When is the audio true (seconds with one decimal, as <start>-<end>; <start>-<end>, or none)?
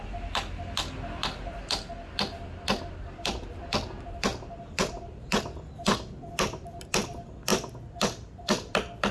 0.0-9.1